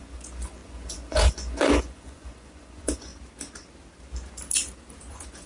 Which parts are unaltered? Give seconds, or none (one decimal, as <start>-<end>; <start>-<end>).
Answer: 3.1-5.1